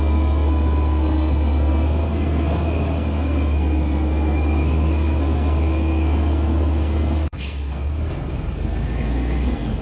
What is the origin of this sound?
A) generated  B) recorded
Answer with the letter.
A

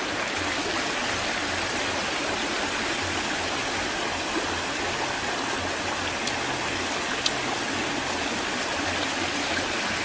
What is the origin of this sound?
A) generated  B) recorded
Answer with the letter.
B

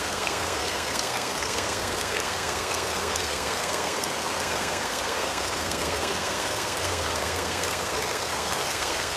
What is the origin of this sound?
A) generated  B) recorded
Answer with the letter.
A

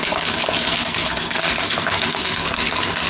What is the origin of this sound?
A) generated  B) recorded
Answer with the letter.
A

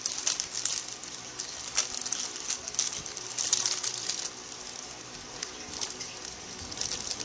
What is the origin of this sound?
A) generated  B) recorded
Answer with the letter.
B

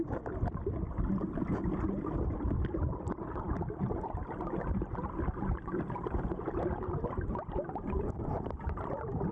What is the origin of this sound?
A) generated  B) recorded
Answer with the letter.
B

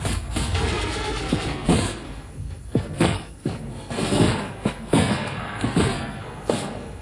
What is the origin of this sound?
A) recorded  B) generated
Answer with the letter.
B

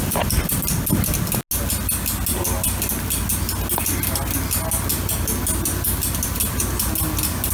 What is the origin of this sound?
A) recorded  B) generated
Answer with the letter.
A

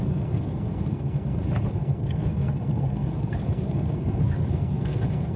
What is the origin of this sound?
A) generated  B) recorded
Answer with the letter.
A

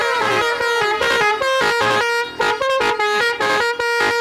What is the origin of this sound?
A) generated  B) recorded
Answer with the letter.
B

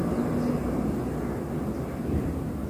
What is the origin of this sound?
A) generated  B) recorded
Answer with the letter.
B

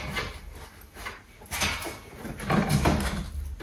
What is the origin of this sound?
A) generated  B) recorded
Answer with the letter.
B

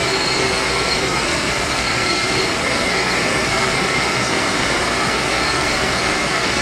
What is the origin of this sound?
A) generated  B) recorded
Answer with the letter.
A